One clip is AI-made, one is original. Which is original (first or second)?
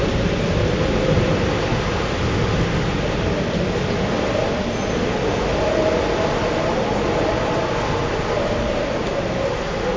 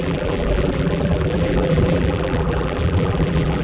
first